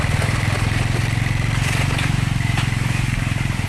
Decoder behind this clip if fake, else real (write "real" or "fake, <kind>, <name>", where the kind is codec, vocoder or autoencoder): fake, vocoder, BigVGAN v2